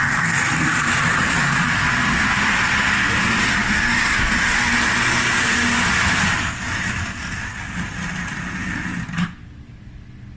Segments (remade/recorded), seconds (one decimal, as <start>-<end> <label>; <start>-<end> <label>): 0.0-10.4 recorded